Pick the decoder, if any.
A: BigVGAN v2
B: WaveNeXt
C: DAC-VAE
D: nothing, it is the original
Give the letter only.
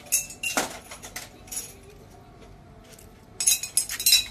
D